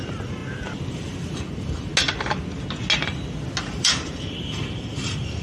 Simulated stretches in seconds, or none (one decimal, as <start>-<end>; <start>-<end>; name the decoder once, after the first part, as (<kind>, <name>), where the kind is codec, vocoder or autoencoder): 0.0-0.4 (vocoder, BigVGAN v2); 0.9-1.9; 3.6-5.4